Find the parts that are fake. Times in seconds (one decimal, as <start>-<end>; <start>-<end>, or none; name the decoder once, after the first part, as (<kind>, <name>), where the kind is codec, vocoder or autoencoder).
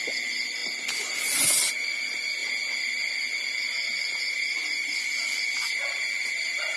0.6-1.7 (vocoder, BigVGAN v2)